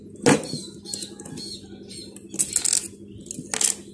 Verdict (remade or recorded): recorded